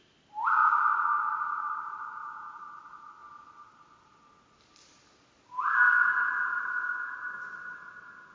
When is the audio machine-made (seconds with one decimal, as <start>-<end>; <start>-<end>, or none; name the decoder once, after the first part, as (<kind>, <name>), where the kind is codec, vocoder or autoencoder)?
2.0-2.6 (vocoder, Vocos); 6.5-7.5